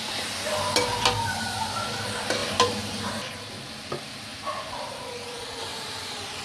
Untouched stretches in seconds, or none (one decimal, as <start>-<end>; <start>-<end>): 0.0-2.4; 3.1-4.3; 4.8-5.7